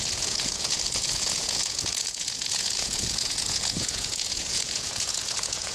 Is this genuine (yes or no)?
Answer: no